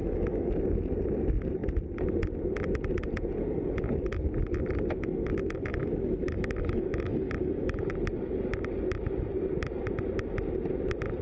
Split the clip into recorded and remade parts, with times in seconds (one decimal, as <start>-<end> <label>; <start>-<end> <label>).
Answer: 0.0-0.5 remade; 0.5-5.7 recorded; 5.7-7.8 remade; 7.8-11.2 recorded